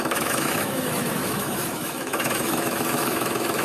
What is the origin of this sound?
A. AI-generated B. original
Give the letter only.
A